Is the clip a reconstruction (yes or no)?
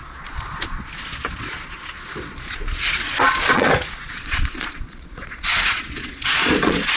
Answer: yes